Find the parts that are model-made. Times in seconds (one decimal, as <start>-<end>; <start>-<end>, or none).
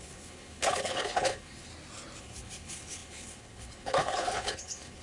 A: 0.0-1.7; 2.2-5.0